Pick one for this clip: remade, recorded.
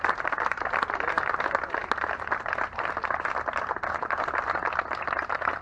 recorded